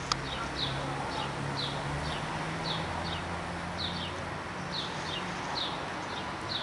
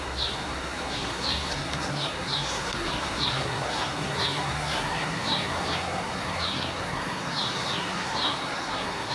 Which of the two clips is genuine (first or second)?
first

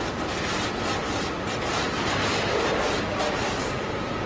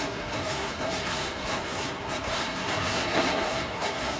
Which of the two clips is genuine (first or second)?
first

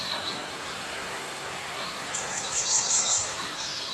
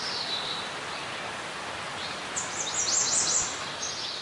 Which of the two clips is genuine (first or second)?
second